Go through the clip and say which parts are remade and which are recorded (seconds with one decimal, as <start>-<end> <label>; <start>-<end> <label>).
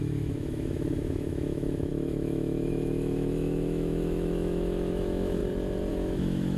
0.0-5.4 remade; 5.4-5.9 recorded; 5.9-6.6 remade